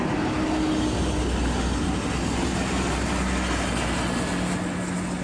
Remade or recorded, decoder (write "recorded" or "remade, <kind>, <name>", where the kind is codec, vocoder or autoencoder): recorded